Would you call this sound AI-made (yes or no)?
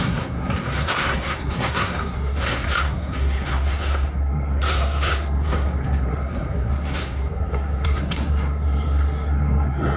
yes